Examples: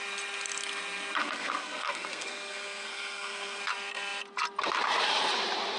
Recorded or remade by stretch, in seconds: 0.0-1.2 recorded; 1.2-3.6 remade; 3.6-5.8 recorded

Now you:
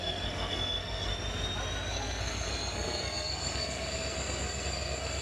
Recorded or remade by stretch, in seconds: 0.0-1.1 remade; 1.1-1.9 recorded; 1.9-5.2 remade

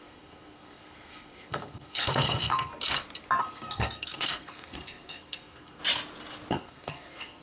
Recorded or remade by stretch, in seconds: 0.0-2.7 remade; 2.7-3.4 recorded; 3.4-5.8 remade; 5.8-6.5 recorded; 6.5-7.4 remade

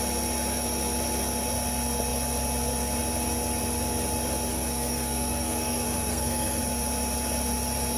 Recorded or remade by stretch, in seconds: 0.0-4.5 recorded; 4.5-6.6 remade; 6.6-8.0 recorded